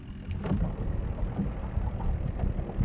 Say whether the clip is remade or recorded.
recorded